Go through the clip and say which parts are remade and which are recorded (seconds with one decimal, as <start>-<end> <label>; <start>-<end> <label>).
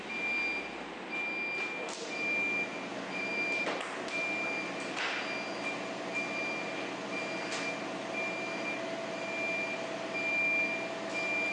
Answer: 0.0-2.9 recorded; 2.9-3.7 remade; 3.7-11.5 recorded